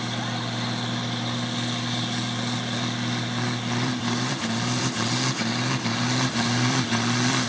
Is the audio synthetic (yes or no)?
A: yes